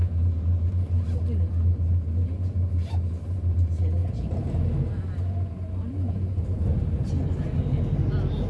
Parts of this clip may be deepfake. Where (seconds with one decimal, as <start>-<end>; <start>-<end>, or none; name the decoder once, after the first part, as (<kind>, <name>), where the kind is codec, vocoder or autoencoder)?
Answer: none